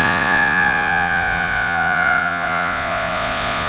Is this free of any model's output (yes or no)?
no